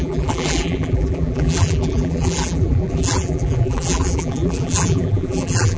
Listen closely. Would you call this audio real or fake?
fake